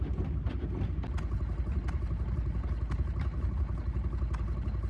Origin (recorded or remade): recorded